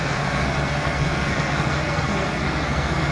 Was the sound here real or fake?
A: fake